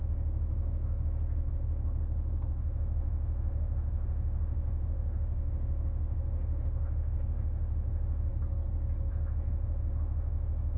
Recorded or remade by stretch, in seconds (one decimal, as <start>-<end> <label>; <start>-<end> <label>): 0.0-8.3 remade; 8.3-9.1 recorded; 9.1-10.8 remade